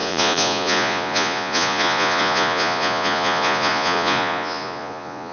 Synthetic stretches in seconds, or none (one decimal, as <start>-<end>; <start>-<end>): 0.0-5.3